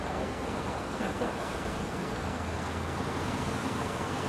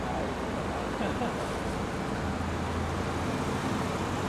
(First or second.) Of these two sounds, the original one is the second